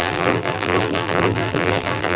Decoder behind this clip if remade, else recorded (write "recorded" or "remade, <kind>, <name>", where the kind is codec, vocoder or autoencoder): remade, vocoder, BigVGAN v2